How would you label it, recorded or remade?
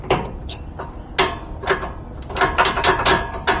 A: recorded